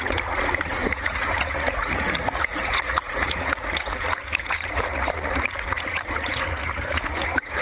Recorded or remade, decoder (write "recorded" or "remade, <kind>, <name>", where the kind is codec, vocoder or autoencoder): remade, vocoder, Vocos